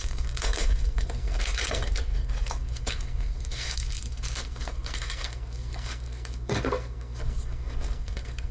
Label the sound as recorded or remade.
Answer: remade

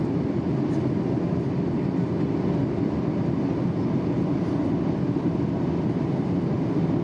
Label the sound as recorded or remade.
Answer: recorded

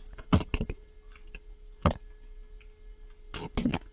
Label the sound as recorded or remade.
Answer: recorded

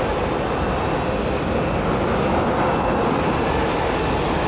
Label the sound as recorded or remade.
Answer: recorded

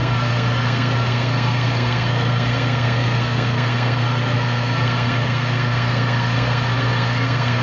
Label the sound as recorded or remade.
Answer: remade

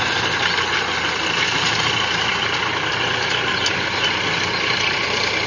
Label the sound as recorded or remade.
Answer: recorded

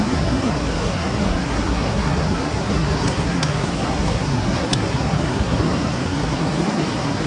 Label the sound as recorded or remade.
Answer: remade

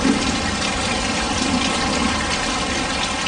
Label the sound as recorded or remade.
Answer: recorded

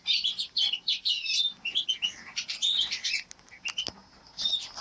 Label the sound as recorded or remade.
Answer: recorded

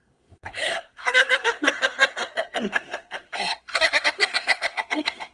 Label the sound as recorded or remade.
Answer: remade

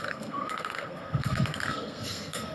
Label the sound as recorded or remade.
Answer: remade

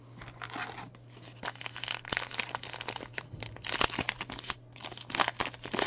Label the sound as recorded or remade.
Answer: recorded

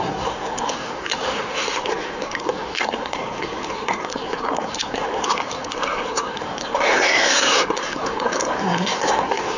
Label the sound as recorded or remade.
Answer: remade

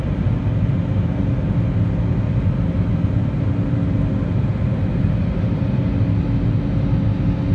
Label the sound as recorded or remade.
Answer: recorded